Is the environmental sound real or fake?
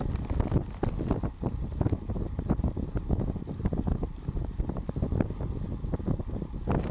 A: real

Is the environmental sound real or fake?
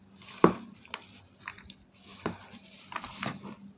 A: real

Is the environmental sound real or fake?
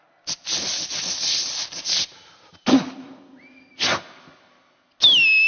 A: real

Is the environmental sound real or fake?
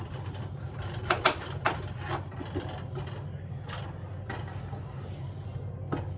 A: real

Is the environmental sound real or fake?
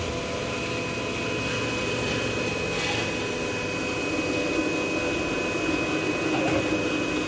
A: real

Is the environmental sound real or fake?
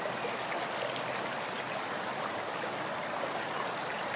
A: real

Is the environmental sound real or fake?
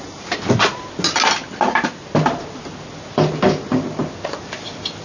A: real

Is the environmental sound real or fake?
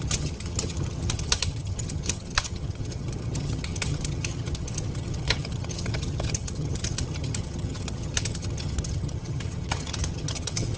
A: fake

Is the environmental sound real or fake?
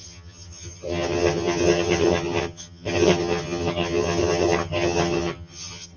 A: fake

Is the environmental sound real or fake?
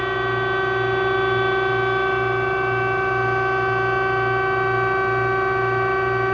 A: real